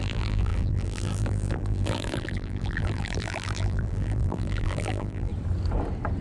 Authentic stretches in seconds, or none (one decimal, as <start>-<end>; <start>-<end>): 5.3-6.2